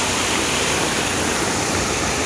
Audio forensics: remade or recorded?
recorded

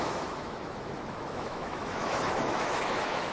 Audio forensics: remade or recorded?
remade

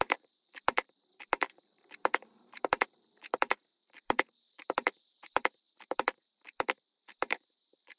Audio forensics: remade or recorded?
remade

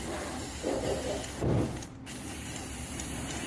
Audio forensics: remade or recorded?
recorded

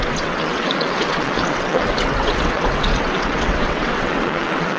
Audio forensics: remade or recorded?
remade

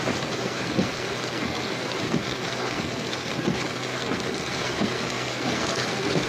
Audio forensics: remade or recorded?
remade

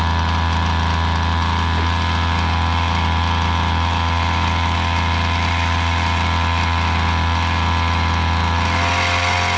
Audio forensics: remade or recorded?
recorded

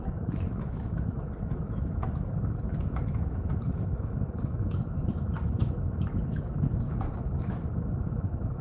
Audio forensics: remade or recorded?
remade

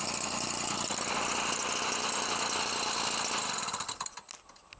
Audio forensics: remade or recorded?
recorded